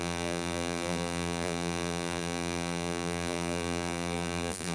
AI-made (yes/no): yes